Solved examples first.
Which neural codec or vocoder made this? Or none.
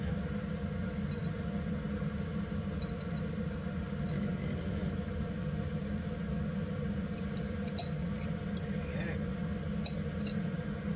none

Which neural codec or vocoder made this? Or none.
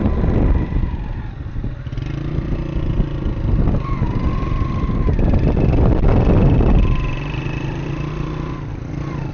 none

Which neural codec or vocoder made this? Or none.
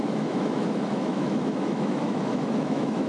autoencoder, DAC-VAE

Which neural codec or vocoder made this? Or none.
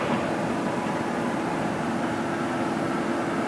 none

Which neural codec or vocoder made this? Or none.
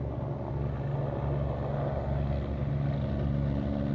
none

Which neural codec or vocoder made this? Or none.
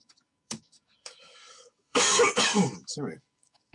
codec, DAC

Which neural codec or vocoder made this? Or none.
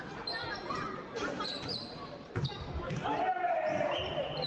none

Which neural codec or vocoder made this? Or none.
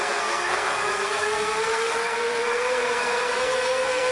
codec, SNAC